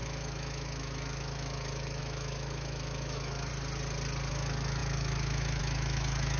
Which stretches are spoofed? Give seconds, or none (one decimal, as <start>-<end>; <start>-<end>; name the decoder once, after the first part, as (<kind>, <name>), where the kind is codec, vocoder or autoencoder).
0.0-3.5 (autoencoder, DAC-VAE); 4.3-6.4